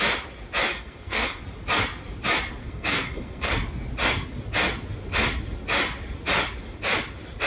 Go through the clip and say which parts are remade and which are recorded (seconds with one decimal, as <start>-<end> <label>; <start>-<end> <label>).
0.0-0.7 recorded; 0.7-1.4 remade; 1.4-2.6 recorded; 2.6-3.5 remade; 3.5-7.5 recorded